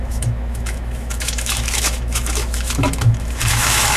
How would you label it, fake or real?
fake